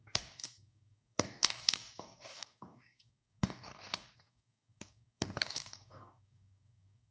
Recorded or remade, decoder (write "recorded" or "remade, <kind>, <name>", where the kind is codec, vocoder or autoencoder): remade, codec, DAC